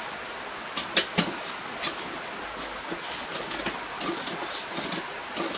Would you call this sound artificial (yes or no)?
no